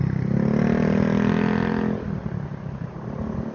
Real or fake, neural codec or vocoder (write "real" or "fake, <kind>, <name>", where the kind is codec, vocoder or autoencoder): real